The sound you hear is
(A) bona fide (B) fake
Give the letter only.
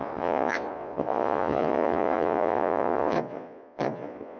B